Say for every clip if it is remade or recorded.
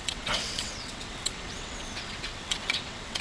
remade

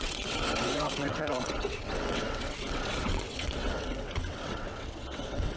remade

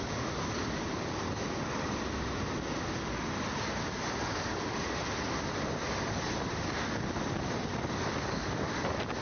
recorded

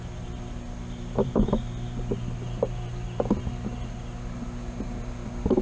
recorded